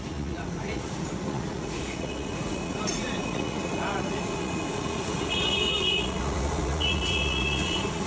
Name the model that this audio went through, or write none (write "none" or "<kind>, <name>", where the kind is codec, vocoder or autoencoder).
vocoder, Vocos